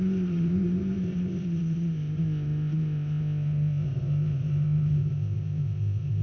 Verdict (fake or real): fake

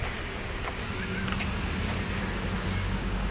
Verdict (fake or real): real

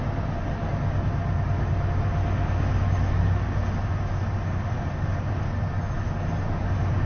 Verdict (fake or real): real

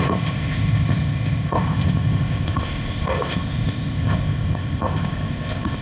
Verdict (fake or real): fake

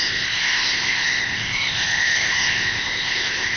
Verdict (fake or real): fake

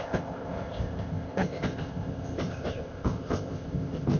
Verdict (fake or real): fake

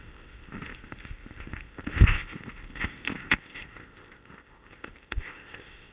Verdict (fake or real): fake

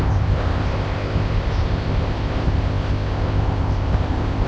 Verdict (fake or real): fake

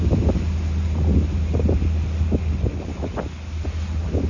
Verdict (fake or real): real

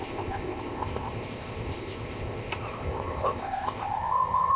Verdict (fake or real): fake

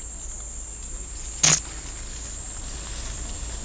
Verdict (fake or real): real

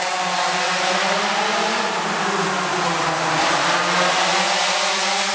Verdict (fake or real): real